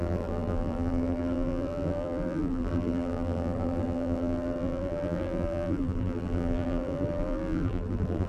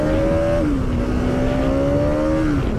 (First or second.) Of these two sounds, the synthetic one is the first